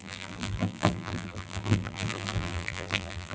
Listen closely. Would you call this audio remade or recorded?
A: remade